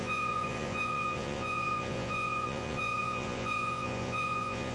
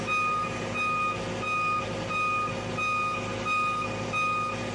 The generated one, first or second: first